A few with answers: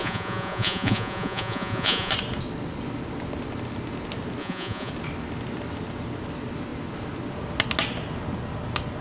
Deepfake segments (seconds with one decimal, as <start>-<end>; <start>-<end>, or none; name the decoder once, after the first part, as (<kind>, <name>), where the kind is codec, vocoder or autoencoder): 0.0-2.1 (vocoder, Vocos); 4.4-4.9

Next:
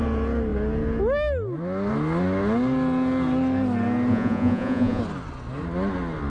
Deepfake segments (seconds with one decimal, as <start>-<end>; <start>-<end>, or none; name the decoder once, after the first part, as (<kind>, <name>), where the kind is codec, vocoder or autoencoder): 4.1-5.0 (vocoder, Vocos)

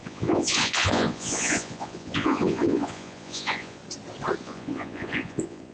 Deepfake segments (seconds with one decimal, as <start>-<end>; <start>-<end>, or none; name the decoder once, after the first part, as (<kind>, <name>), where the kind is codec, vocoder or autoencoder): 0.0-3.8 (vocoder, Vocos); 4.4-5.7

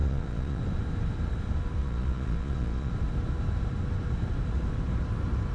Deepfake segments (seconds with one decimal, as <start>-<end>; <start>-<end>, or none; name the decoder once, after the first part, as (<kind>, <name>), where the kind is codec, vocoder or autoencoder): 0.0-0.6 (vocoder, Vocos); 1.8-2.9

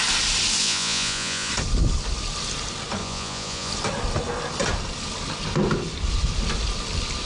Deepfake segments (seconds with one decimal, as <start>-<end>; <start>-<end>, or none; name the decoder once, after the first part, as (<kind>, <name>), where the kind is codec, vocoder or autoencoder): 0.6-1.5 (vocoder, Vocos); 3.0-3.7

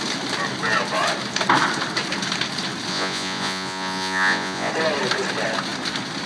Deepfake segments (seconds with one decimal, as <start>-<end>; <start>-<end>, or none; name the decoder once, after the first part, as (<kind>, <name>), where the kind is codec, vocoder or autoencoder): 2.9-4.7 (vocoder, Vocos)

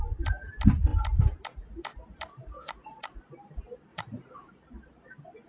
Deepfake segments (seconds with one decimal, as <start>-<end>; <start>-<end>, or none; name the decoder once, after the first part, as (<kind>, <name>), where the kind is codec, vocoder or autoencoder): 2.3-3.2 (vocoder, Vocos); 3.9-4.5